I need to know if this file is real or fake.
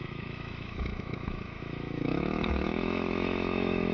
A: fake